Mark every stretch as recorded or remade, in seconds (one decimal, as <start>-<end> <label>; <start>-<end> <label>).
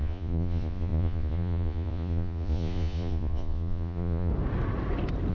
0.0-4.3 remade; 4.3-5.3 recorded